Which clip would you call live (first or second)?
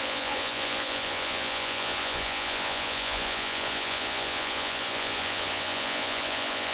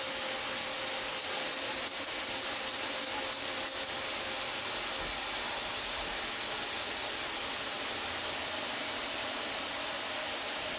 second